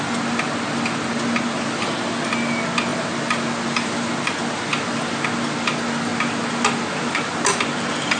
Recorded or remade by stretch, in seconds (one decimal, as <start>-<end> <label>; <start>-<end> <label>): 0.0-8.2 recorded